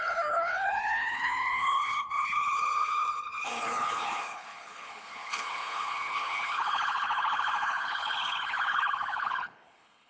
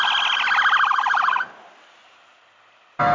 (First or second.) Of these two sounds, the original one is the second